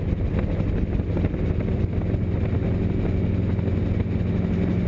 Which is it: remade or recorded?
recorded